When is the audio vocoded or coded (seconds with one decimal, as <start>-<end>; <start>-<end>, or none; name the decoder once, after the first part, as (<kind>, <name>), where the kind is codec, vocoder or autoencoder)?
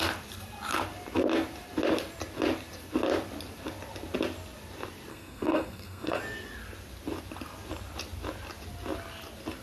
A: 5.1-6.2 (codec, SNAC)